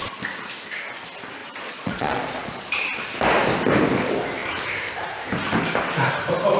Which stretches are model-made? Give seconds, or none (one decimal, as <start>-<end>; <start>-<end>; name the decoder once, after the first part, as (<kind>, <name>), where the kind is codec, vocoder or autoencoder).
1.4-2.7 (vocoder, Vocos)

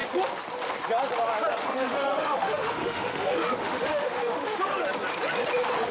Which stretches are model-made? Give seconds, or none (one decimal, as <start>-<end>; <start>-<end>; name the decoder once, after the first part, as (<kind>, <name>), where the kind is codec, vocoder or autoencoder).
1.6-4.8 (autoencoder, DAC-VAE)

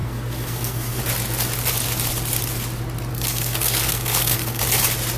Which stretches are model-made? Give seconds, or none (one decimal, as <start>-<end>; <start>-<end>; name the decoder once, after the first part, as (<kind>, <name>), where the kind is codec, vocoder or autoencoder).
0.0-1.0 (codec, SNAC); 3.1-4.6

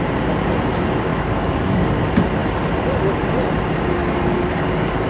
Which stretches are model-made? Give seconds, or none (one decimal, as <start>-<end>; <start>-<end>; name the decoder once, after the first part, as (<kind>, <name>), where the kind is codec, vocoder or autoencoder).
1.1-2.0 (codec, DAC); 4.0-5.1

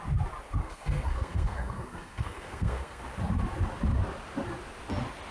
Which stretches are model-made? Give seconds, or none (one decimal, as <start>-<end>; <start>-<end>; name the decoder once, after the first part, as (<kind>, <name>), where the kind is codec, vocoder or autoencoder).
0.6-3.0 (codec, SNAC)